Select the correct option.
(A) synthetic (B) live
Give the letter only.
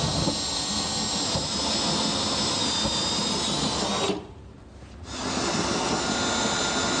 B